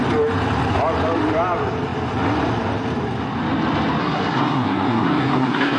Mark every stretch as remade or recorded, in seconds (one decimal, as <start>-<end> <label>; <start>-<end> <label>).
0.0-4.0 recorded; 4.0-5.8 remade